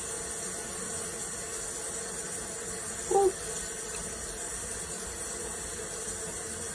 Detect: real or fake real